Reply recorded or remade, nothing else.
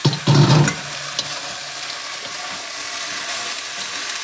recorded